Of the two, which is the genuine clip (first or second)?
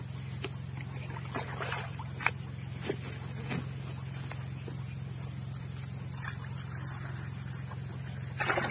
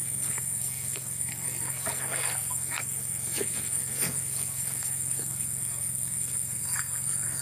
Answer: first